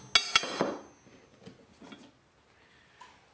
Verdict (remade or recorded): recorded